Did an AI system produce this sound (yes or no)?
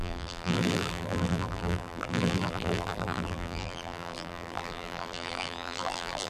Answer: yes